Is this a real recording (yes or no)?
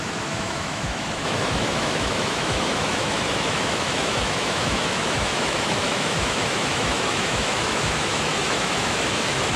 no